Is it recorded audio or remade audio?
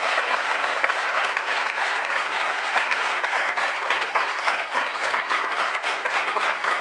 remade